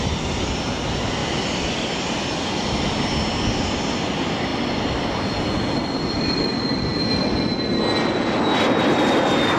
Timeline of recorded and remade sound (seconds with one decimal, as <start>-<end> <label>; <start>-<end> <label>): 0.0-9.6 recorded